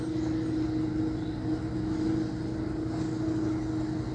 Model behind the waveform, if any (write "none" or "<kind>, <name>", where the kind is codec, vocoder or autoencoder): none